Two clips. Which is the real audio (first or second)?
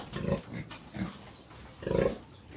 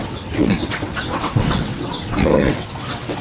first